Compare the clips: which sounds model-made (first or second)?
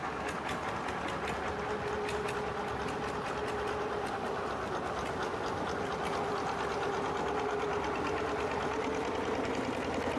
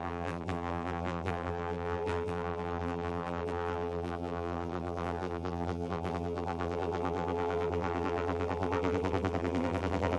second